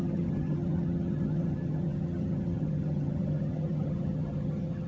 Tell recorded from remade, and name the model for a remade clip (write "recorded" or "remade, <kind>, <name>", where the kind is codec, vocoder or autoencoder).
remade, vocoder, HiFi-GAN